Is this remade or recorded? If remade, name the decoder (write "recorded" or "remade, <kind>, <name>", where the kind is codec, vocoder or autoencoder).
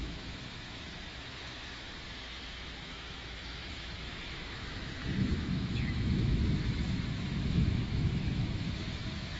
remade, autoencoder, DAC-VAE